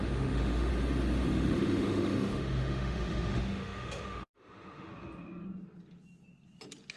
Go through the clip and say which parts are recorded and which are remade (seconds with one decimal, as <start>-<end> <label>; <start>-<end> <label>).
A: 0.0-0.7 remade; 0.7-1.3 recorded; 1.3-4.9 remade; 4.9-7.0 recorded